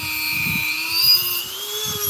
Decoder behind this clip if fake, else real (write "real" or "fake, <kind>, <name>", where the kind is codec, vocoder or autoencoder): fake, vocoder, BigVGAN v2